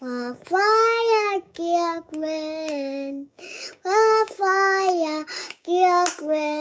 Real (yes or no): no